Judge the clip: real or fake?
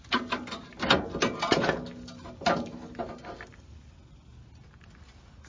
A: real